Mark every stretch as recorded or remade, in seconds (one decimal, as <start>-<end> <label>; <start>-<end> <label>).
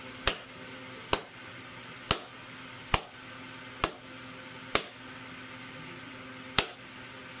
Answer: 0.0-7.4 recorded